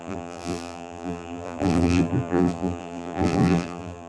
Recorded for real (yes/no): no